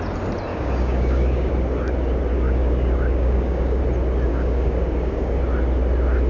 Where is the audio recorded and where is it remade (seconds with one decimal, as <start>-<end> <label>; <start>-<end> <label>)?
0.0-0.5 recorded; 0.5-1.5 remade; 1.5-2.3 recorded; 2.3-3.8 remade; 3.8-4.3 recorded; 4.3-5.4 remade; 5.4-6.3 recorded